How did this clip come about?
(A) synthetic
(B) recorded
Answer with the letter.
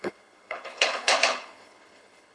A